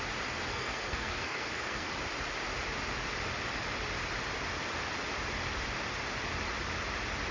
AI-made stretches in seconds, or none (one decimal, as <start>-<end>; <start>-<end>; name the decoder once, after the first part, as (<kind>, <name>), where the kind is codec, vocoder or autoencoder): 0.5-1.9 (codec, SNAC)